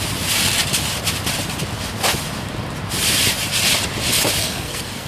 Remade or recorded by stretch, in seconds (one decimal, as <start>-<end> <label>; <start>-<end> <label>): 0.0-4.4 recorded; 4.4-5.1 remade